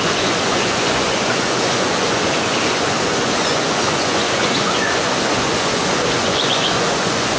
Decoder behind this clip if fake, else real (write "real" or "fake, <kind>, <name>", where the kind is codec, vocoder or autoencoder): fake, vocoder, Vocos